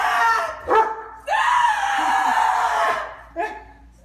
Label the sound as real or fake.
real